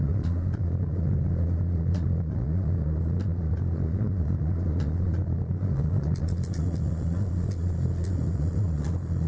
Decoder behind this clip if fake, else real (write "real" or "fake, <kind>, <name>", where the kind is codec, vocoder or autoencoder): fake, vocoder, Vocos